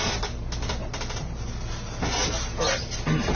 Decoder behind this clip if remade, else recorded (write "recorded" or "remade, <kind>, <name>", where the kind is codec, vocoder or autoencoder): recorded